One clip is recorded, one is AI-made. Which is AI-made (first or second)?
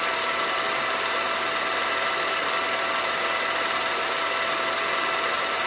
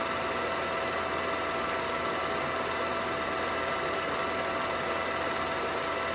first